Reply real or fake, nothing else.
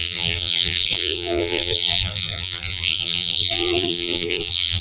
fake